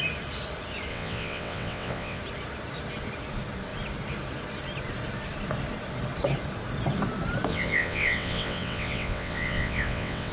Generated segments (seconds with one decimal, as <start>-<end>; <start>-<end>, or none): 0.9-2.2; 7.5-10.3